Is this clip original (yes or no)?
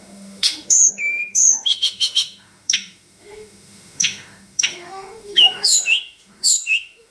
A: no